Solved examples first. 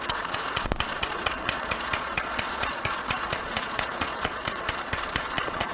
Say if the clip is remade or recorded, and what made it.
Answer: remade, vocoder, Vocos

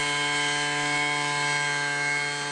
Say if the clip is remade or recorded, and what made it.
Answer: recorded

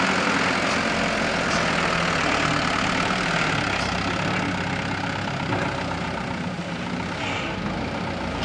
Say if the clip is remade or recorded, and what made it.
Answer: recorded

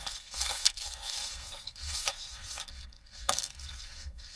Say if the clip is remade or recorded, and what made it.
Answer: remade, codec, SNAC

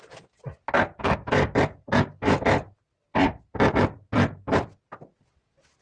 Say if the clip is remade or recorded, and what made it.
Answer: recorded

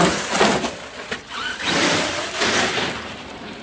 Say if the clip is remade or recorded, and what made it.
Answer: recorded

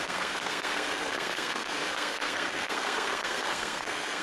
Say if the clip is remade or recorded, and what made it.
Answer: remade, codec, SNAC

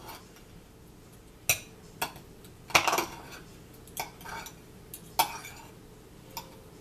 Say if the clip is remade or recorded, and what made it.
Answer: recorded